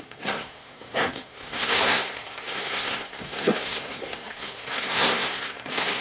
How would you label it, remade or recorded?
remade